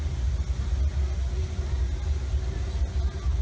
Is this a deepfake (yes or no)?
no